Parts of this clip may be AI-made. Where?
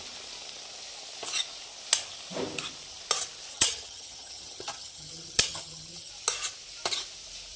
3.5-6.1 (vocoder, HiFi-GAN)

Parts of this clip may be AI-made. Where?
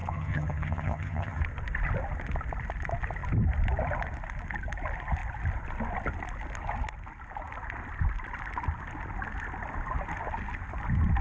0.0-1.4 (vocoder, HiFi-GAN)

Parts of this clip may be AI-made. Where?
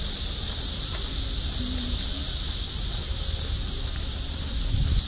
none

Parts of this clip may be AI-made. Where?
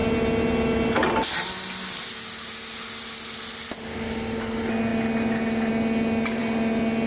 none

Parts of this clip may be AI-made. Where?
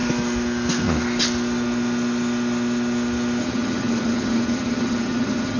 3.4-5.6 (vocoder, HiFi-GAN)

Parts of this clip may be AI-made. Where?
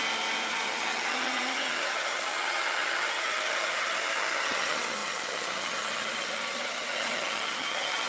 0.5-8.1 (vocoder, HiFi-GAN)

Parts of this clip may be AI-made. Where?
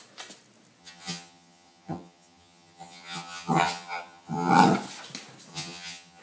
0.8-4.5 (vocoder, HiFi-GAN); 5.5-6.2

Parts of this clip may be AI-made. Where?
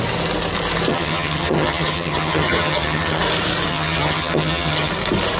0.9-3.2 (vocoder, HiFi-GAN); 3.7-4.9